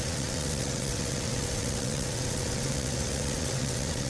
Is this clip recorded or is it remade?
remade